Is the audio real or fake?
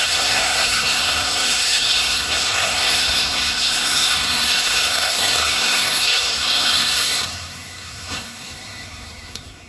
fake